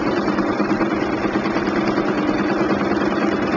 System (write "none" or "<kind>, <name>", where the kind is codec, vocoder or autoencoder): none